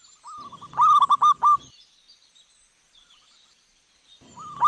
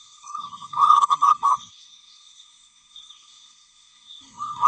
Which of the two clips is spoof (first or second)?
second